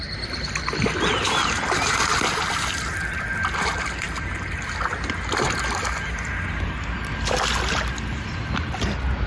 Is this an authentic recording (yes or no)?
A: yes